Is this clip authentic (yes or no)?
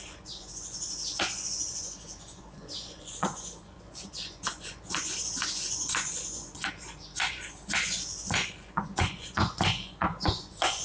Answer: no